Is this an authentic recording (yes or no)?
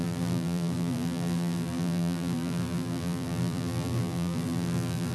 no